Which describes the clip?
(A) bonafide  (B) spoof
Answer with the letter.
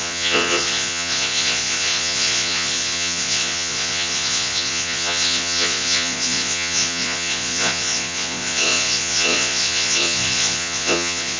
B